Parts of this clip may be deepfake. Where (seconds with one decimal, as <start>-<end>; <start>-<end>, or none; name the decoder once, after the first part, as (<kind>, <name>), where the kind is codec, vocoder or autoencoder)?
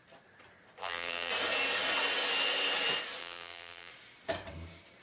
0.8-1.3 (vocoder, BigVGAN v2); 3.2-3.9